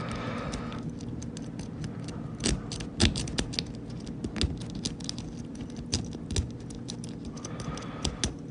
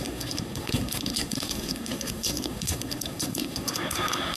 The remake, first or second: second